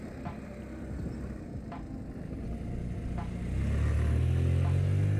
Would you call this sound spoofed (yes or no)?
no